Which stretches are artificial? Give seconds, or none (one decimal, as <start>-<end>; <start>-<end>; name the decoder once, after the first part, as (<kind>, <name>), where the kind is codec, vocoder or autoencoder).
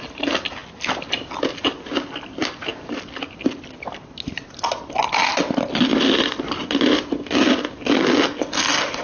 none